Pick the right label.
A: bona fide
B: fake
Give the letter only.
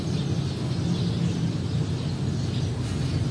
A